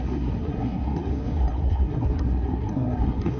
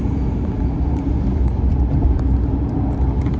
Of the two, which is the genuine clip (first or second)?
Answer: second